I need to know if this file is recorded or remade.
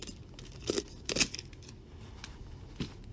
recorded